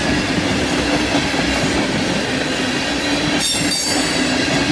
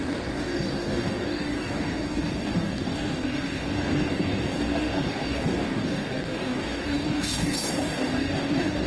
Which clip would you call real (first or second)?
first